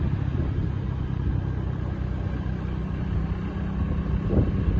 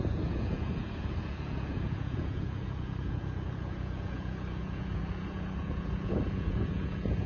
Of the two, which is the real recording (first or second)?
first